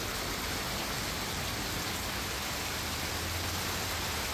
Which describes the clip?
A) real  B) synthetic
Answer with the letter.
A